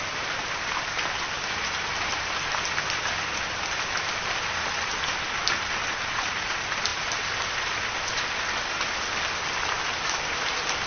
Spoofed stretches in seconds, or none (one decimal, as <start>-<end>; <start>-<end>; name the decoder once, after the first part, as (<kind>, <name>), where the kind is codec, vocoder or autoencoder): none